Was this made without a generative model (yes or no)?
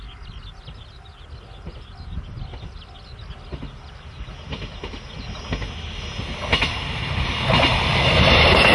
yes